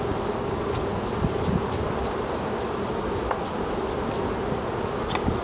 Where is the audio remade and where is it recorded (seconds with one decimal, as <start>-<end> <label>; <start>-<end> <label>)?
0.0-5.4 recorded

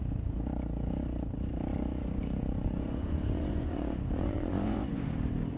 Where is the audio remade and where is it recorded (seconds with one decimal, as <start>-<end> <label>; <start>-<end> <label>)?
0.0-1.7 recorded; 1.7-5.1 remade; 5.1-5.6 recorded

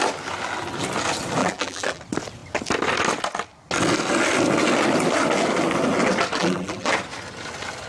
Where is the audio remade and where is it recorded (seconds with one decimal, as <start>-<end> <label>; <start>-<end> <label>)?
0.0-1.4 recorded; 1.4-2.0 remade; 2.0-6.4 recorded; 6.4-6.9 remade; 6.9-7.9 recorded

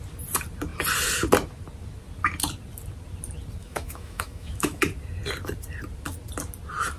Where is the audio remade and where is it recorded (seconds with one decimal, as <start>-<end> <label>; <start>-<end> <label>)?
0.0-3.6 recorded; 3.6-4.8 remade; 4.8-7.0 recorded

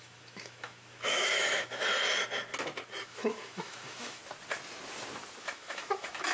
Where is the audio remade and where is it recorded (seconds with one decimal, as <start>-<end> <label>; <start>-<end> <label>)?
0.0-1.8 remade; 1.8-3.0 recorded; 3.0-4.2 remade; 4.2-5.4 recorded; 5.4-6.3 remade